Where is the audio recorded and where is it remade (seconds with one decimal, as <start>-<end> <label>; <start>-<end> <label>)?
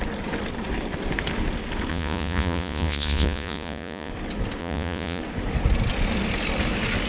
0.0-1.9 recorded; 1.9-4.1 remade; 4.1-4.6 recorded; 4.6-5.2 remade; 5.2-7.1 recorded